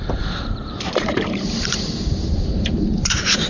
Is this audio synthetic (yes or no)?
yes